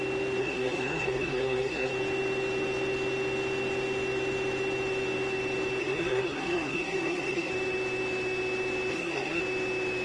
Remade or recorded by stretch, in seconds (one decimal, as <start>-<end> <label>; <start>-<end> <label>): 0.0-0.4 recorded; 0.4-1.9 remade; 1.9-5.8 recorded; 5.8-7.5 remade; 7.5-8.9 recorded; 8.9-9.4 remade; 9.4-10.0 recorded